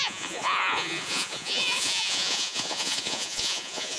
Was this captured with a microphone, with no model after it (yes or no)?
no